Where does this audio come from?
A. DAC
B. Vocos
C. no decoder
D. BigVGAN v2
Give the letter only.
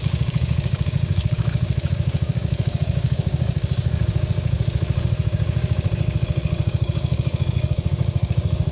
A